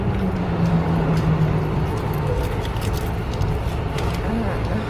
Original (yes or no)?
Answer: yes